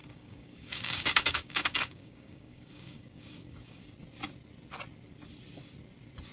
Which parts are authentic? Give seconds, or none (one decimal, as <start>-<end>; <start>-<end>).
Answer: 3.8-6.3

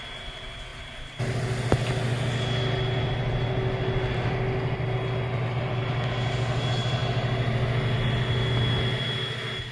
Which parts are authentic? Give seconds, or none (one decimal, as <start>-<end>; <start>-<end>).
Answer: 0.0-9.7

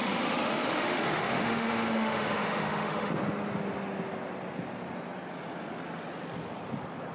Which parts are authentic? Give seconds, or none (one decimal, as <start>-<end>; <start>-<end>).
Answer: 3.1-7.1

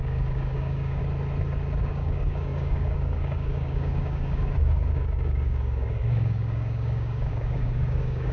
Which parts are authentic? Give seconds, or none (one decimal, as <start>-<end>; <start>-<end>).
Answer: 1.0-1.8